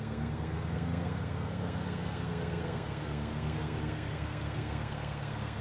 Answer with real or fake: fake